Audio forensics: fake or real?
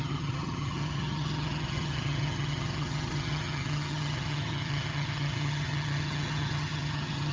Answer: fake